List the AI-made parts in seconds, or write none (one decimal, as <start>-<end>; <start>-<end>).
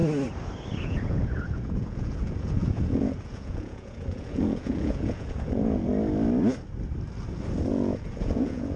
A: 0.8-5.9; 7.7-8.8